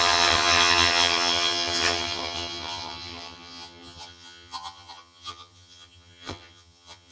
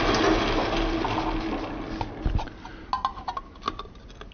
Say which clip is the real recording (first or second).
second